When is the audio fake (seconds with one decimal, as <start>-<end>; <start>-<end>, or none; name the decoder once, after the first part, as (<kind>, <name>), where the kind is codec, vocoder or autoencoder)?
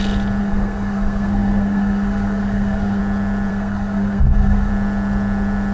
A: 0.4-3.0 (codec, SNAC); 3.5-4.7